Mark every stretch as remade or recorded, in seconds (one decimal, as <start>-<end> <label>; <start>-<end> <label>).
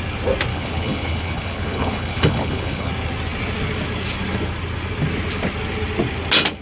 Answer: 0.0-0.5 recorded; 0.5-2.9 remade; 2.9-6.6 recorded